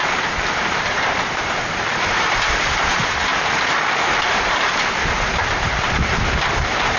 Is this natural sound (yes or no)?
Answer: no